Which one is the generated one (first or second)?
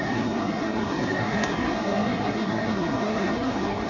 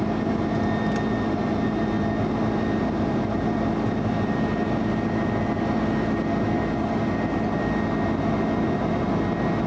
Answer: first